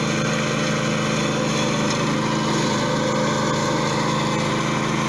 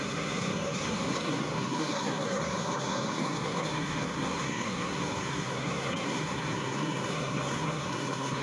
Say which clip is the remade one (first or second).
second